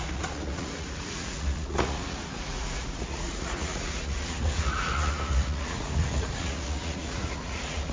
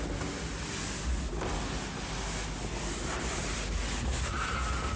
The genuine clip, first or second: second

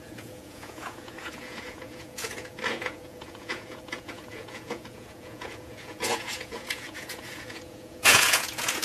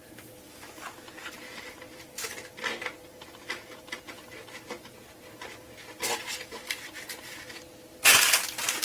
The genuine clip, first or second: second